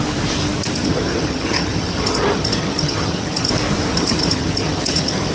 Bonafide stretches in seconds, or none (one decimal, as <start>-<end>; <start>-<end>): 0.0-0.8; 3.5-3.9